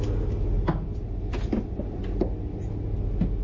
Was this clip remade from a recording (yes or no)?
no